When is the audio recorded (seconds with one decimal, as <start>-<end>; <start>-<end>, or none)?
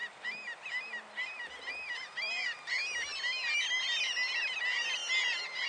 0.0-1.7